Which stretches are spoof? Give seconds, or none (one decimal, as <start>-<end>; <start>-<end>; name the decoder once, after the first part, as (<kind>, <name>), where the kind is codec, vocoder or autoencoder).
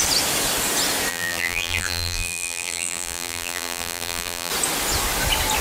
1.1-4.5 (vocoder, BigVGAN v2)